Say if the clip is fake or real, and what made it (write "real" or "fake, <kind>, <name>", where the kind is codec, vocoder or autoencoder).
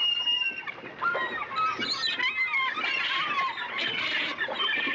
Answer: real